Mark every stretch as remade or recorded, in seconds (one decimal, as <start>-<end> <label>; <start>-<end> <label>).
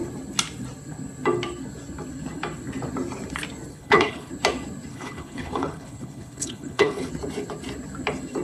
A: 0.0-3.7 recorded; 3.7-4.3 remade; 4.3-4.9 recorded; 4.9-7.1 remade; 7.1-8.4 recorded